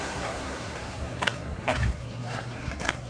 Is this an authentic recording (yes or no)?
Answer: no